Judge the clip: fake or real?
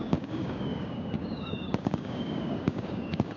fake